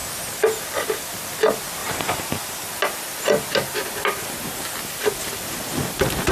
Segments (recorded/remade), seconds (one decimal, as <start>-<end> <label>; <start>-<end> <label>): 0.0-1.8 recorded; 1.8-2.7 remade; 2.7-6.3 recorded

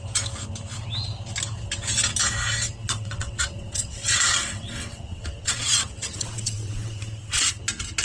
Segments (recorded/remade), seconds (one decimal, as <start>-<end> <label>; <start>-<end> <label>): 0.0-2.8 recorded; 2.8-7.6 remade; 7.6-8.0 recorded

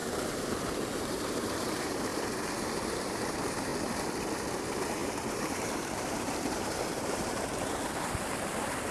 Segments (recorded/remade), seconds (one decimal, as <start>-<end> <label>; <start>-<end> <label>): 0.0-2.1 remade; 2.1-3.0 recorded; 3.0-3.7 remade; 3.7-4.6 recorded; 4.6-8.9 remade

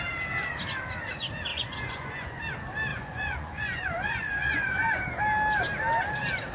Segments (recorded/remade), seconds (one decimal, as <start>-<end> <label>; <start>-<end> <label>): 0.0-1.5 recorded; 1.5-2.4 remade; 2.4-2.9 recorded; 2.9-5.2 remade; 5.2-6.5 recorded